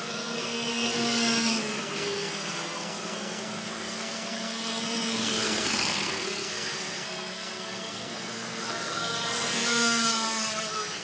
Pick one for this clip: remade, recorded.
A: remade